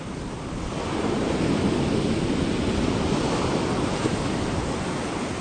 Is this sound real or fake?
real